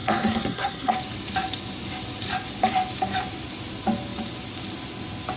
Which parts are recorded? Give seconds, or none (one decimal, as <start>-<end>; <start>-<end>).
0.9-5.4